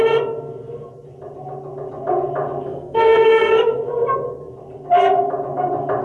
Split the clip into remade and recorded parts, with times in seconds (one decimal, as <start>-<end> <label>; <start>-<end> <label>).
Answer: 0.0-2.7 recorded; 2.7-3.8 remade; 3.8-6.0 recorded